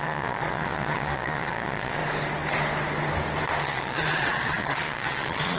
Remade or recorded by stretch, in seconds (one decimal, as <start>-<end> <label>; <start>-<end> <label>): 0.0-2.0 remade; 2.0-3.6 recorded; 3.6-5.6 remade